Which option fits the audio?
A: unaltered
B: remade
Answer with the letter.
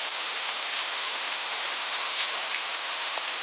B